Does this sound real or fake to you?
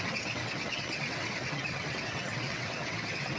fake